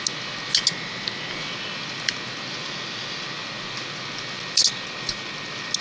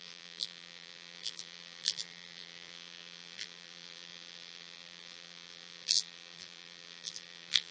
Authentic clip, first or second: first